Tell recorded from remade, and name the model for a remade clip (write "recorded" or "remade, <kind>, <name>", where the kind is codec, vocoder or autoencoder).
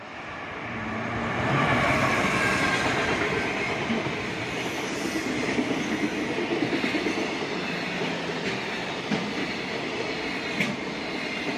recorded